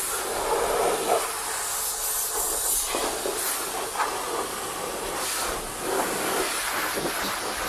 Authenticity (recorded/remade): recorded